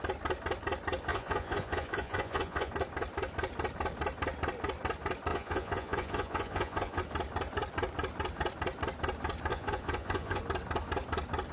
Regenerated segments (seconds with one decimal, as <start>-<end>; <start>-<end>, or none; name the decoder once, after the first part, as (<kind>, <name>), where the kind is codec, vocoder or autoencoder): 1.1-2.7 (vocoder, Vocos); 5.3-7.0; 9.5-10.4

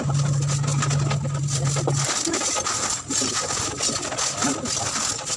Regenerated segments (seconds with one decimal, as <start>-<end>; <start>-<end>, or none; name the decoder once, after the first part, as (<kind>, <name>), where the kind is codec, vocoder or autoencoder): none

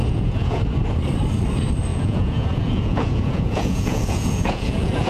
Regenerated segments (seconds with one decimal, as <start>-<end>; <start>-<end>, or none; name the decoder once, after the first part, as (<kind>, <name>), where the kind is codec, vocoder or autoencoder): 0.0-0.6 (vocoder, Vocos); 1.9-5.1

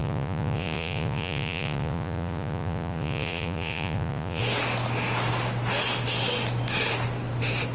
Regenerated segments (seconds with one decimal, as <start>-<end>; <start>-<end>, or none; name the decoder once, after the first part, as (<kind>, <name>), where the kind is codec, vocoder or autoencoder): 0.0-4.4 (vocoder, Vocos)

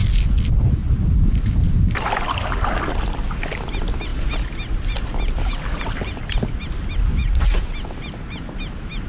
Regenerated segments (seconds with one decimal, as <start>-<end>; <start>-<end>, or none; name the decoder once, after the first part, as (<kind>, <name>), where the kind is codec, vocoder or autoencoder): 7.2-7.7 (vocoder, Vocos)